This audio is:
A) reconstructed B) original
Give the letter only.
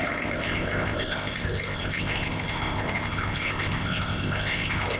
A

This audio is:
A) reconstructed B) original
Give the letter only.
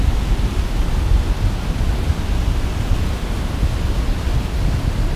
B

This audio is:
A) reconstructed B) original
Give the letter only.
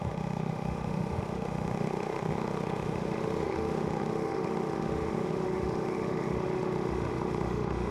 A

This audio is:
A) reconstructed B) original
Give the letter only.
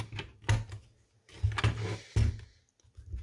B